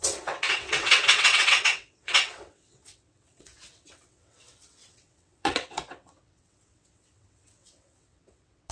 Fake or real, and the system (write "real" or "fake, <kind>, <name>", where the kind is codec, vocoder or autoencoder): fake, vocoder, WaveNeXt